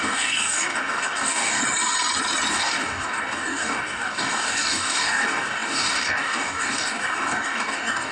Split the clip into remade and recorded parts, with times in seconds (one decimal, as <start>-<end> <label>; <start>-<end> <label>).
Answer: 0.0-1.6 remade; 1.6-2.5 recorded; 2.5-8.1 remade